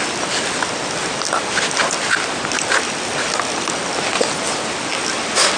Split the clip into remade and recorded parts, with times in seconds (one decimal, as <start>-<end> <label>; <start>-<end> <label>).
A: 0.0-5.6 recorded